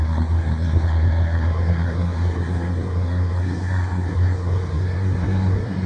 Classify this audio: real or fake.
fake